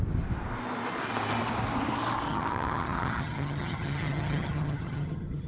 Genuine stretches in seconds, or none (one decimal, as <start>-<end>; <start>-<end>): 0.0-2.3